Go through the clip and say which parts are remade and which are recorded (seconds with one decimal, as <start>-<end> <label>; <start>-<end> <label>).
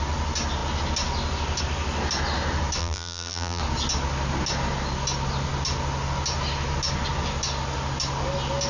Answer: 0.0-2.8 recorded; 2.8-3.6 remade; 3.6-8.7 recorded